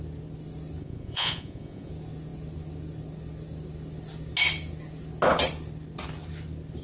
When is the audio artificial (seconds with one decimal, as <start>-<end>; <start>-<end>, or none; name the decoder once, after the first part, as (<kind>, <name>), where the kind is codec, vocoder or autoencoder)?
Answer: 0.8-1.9 (vocoder, Vocos)